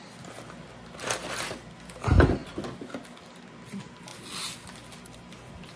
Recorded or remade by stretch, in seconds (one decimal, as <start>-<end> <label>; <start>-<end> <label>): 0.0-5.8 recorded

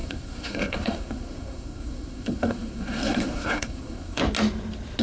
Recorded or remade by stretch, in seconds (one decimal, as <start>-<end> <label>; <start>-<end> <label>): 0.0-4.2 remade; 4.2-5.0 recorded

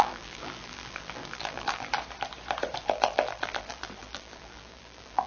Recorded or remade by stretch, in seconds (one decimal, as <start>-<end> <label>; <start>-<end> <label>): 0.0-1.9 remade; 1.9-2.8 recorded; 2.8-5.3 remade

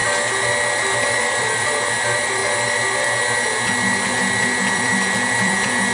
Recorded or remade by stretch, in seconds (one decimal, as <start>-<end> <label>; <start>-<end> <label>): 0.0-1.1 recorded; 1.1-2.4 remade; 2.4-4.7 recorded; 4.7-5.9 remade

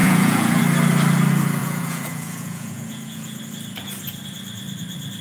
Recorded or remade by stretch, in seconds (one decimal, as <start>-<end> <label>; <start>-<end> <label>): 0.0-0.6 remade; 0.6-1.6 recorded; 1.6-3.4 remade; 3.4-5.2 recorded

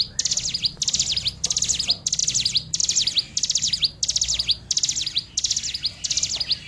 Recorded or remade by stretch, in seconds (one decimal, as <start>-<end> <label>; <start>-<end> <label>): 0.0-6.7 recorded

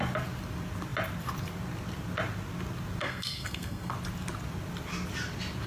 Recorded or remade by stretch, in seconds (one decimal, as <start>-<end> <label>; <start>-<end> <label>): 0.0-3.0 recorded; 3.0-3.9 remade; 3.9-5.7 recorded